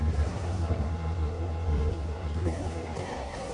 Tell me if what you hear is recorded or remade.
remade